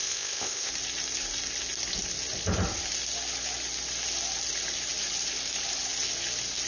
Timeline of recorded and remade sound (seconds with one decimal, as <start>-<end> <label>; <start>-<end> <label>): 0.0-0.7 remade; 0.7-6.7 recorded